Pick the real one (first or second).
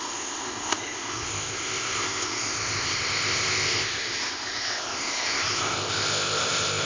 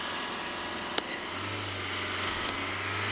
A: second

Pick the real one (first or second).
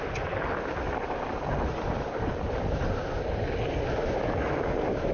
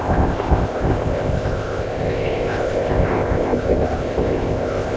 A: first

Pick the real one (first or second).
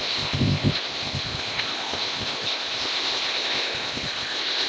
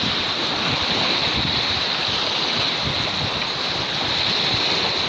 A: second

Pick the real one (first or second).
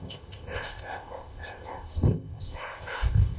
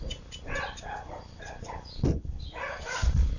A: second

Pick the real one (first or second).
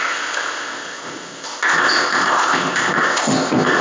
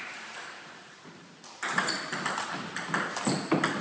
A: second